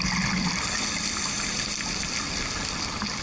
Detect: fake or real real